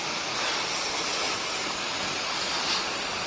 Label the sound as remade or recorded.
recorded